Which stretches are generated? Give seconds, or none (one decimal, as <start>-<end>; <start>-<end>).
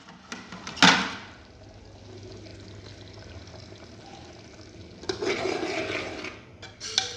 none